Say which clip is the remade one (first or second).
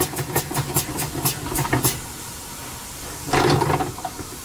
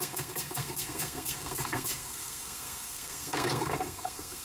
second